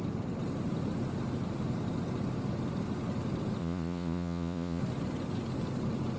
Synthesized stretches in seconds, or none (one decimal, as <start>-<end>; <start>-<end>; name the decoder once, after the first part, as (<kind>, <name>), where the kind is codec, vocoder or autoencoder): 3.6-4.8 (vocoder, Vocos)